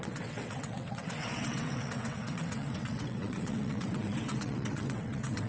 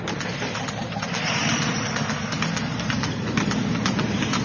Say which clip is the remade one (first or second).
first